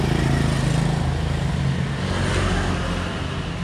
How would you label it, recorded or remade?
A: recorded